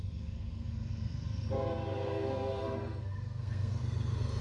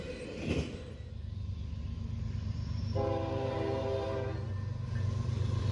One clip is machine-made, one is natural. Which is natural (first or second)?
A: second